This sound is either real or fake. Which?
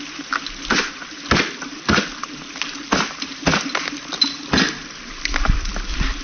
real